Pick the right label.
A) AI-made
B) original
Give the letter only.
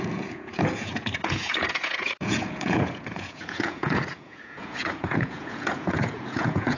A